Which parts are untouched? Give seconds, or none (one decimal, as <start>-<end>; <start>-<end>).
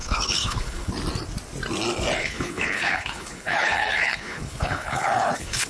0.9-2.2